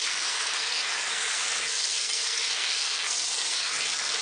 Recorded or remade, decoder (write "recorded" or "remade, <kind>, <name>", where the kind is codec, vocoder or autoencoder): remade, codec, SNAC